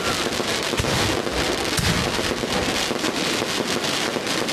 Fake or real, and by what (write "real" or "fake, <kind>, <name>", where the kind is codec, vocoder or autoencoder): real